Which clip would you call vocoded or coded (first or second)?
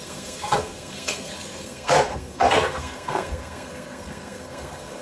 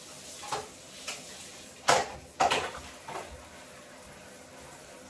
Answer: first